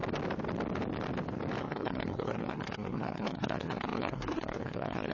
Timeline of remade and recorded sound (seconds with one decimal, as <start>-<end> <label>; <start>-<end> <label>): 0.0-1.6 recorded; 1.6-5.1 remade